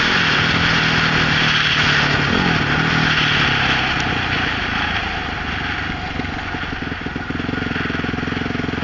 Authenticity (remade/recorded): recorded